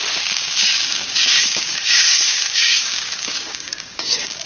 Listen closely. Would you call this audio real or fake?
fake